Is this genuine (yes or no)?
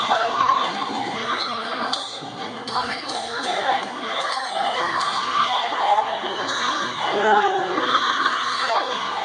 no